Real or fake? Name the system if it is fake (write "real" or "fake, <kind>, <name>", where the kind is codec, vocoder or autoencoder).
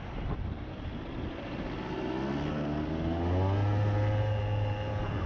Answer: real